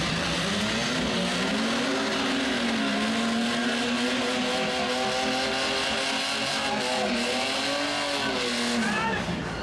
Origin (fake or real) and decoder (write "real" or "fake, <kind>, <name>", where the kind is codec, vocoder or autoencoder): real